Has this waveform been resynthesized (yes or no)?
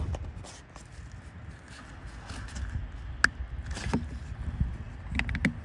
no